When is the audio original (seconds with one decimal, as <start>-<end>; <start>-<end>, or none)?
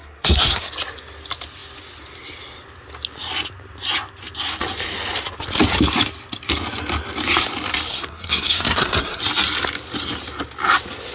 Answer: 0.7-7.9; 9.2-11.1